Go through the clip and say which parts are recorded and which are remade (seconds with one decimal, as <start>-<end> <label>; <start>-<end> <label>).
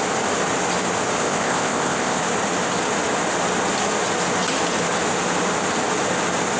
0.0-1.2 recorded; 1.2-2.2 remade; 2.2-6.6 recorded